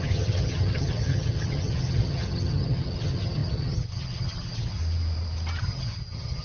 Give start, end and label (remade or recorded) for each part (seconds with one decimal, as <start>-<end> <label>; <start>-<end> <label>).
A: 0.0-4.8 remade; 4.8-5.6 recorded; 5.6-6.4 remade